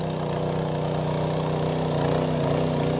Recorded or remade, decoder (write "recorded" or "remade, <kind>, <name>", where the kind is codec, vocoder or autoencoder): recorded